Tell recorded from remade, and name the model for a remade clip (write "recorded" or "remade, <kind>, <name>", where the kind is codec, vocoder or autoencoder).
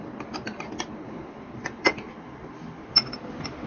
recorded